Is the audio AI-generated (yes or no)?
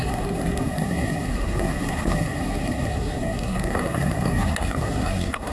yes